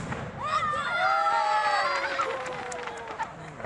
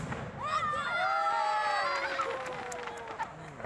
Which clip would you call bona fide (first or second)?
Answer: second